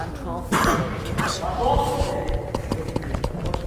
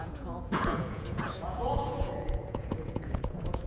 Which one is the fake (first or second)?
second